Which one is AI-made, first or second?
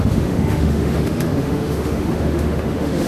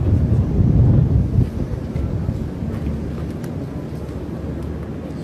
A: first